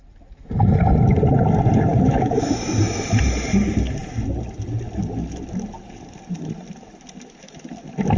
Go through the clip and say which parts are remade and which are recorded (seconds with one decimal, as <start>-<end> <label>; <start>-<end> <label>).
0.0-1.9 recorded; 1.9-2.8 remade; 2.8-8.2 recorded